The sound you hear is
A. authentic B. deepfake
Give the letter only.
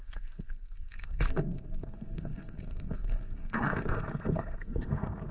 B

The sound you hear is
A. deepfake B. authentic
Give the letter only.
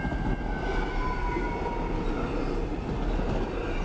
B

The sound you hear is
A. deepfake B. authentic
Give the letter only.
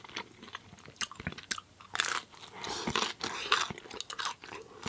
B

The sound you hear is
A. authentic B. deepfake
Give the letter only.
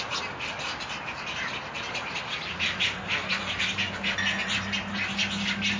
A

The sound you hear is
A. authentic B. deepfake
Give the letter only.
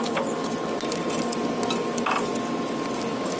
A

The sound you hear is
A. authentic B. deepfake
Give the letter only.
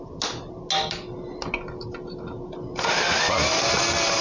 A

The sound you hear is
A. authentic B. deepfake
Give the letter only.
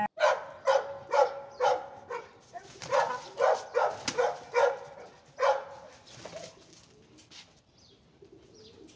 A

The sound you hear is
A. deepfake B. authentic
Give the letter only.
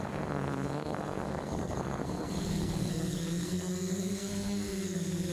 A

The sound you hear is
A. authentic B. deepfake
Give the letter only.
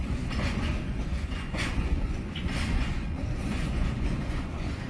B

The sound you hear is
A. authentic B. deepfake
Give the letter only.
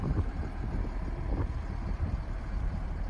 B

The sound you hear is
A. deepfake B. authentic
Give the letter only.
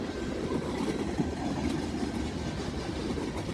B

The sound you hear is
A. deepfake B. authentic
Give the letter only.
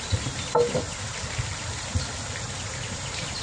B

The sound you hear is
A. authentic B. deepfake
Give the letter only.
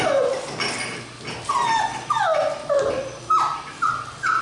A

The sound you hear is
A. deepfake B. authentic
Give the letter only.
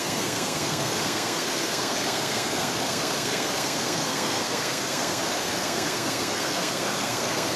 A